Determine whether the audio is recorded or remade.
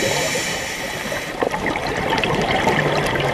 remade